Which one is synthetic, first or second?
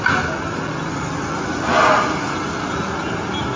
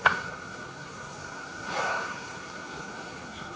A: second